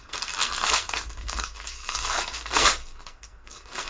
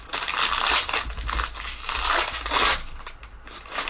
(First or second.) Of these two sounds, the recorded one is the second